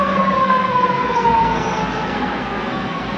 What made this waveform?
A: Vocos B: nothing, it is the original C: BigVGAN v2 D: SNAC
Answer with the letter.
D